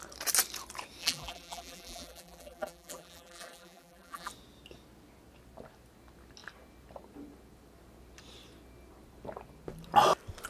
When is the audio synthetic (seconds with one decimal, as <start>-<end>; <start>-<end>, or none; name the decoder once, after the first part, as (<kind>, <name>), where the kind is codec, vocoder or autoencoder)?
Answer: 1.0-4.3 (vocoder, BigVGAN v2)